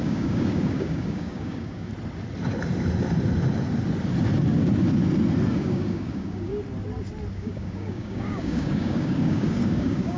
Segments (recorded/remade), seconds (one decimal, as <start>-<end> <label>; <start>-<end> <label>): 0.0-1.9 remade; 1.9-5.5 recorded; 5.5-6.5 remade; 6.5-7.3 recorded; 7.3-10.2 remade

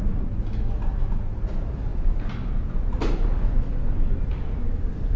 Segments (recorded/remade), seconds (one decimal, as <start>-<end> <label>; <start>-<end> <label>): 0.0-5.2 recorded

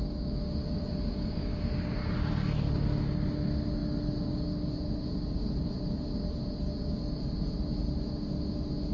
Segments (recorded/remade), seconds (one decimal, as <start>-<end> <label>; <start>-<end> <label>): 0.0-1.1 recorded; 1.1-1.7 remade; 1.7-8.9 recorded

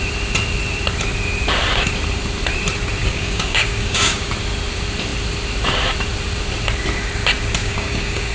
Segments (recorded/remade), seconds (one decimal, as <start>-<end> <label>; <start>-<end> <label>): 0.0-3.0 recorded; 3.0-4.3 remade; 4.3-7.6 recorded; 7.6-8.3 remade

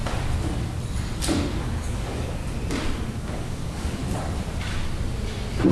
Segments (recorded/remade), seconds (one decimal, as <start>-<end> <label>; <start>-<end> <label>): 0.0-1.6 recorded; 1.6-2.4 remade; 2.4-3.1 recorded; 3.1-4.0 remade; 4.0-5.7 recorded

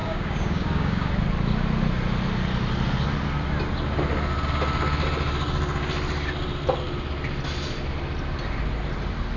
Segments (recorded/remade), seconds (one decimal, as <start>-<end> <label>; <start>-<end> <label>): 0.0-1.1 remade; 1.1-9.4 recorded

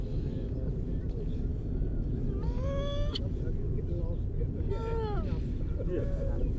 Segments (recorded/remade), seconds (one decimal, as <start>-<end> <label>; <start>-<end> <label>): 0.0-1.5 recorded; 1.5-2.2 remade; 2.2-6.6 recorded